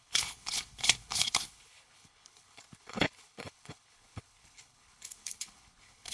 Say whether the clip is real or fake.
fake